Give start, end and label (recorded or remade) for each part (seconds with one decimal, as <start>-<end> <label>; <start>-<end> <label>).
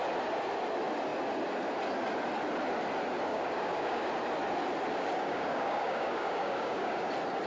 0.0-3.3 recorded; 3.3-4.1 remade; 4.1-4.9 recorded; 4.9-7.1 remade; 7.1-7.5 recorded